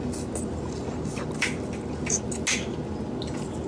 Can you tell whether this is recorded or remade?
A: recorded